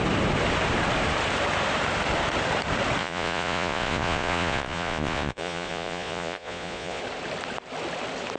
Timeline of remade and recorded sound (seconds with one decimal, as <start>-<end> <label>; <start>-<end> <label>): 0.0-3.0 recorded; 3.0-7.0 remade; 7.0-8.4 recorded